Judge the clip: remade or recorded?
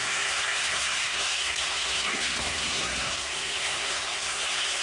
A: remade